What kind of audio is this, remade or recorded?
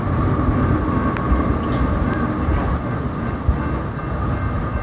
recorded